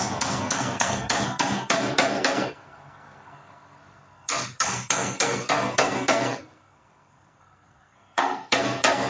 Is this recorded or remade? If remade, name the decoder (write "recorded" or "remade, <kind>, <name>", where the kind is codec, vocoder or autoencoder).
remade, codec, SNAC